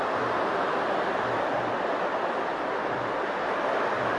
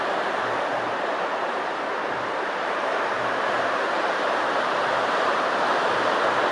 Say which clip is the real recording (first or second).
first